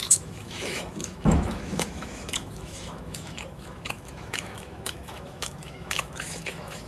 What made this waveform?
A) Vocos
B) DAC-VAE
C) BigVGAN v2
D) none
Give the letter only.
B